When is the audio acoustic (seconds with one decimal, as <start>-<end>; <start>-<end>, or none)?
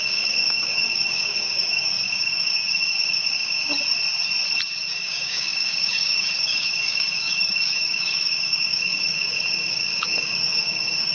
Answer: 3.7-4.9